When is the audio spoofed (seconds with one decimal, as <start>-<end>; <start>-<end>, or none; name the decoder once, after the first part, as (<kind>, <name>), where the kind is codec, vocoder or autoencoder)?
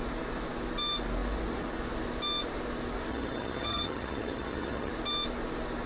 3.1-4.9 (vocoder, HiFi-GAN)